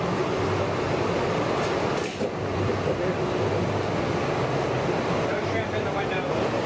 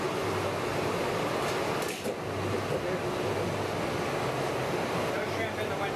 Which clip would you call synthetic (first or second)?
first